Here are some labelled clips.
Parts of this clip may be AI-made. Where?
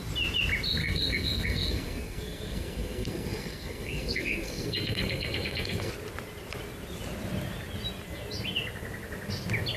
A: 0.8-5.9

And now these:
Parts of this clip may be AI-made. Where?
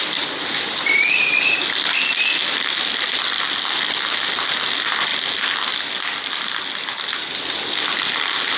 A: none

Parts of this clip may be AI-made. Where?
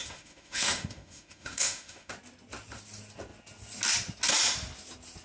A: 0.0-2.1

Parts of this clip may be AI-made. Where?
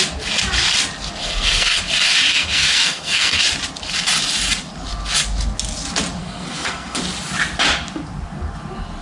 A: 1.2-1.8; 2.3-3.4; 6.2-7.0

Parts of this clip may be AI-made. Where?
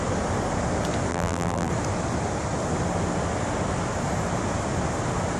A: 1.1-1.7